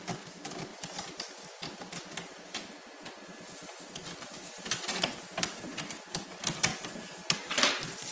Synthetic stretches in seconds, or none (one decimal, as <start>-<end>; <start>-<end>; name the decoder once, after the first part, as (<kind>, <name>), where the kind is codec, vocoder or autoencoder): none